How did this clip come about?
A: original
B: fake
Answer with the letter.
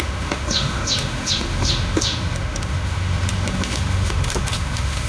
B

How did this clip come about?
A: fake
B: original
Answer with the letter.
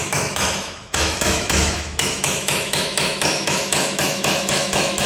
A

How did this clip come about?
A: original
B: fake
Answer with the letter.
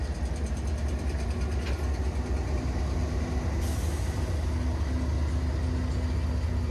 A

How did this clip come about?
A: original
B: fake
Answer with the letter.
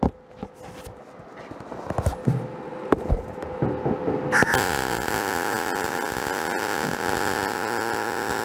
A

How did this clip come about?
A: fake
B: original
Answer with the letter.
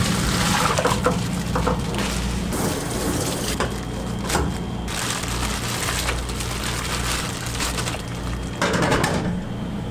B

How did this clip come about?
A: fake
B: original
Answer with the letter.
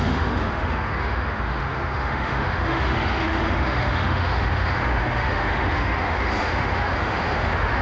A